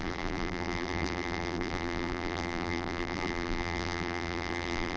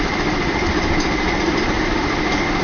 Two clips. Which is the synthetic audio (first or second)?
first